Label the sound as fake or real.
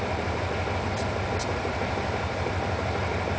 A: real